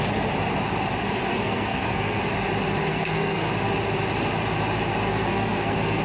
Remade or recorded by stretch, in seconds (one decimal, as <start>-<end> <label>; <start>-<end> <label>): 0.0-1.3 recorded; 1.3-2.2 remade; 2.2-2.9 recorded; 2.9-3.5 remade; 3.5-5.1 recorded; 5.1-6.0 remade